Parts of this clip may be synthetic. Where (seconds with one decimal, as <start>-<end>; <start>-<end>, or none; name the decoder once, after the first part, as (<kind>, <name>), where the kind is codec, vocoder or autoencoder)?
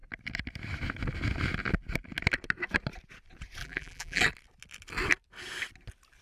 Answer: 3.6-4.2 (vocoder, BigVGAN v2)